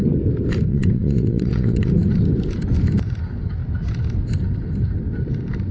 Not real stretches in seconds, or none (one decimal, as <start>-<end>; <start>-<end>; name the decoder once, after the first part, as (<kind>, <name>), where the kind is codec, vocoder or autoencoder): 0.7-1.9 (vocoder, WaveNeXt)

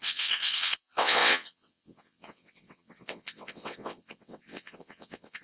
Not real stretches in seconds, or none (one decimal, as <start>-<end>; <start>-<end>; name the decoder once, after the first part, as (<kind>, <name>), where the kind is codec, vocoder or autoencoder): 0.0-5.4 (vocoder, WaveNeXt)

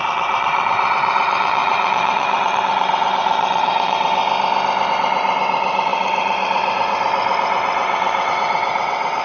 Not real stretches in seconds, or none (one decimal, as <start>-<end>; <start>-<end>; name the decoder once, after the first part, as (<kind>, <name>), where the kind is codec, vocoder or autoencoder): 0.0-4.2 (vocoder, WaveNeXt); 4.9-9.2

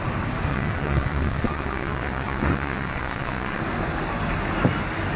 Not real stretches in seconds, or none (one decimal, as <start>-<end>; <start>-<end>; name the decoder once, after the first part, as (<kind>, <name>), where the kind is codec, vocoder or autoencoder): 0.5-3.6 (vocoder, WaveNeXt)